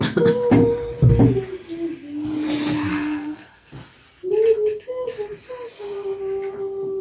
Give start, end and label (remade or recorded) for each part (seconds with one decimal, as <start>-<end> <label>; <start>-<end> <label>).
0.0-2.9 recorded; 2.9-3.7 remade; 3.7-7.0 recorded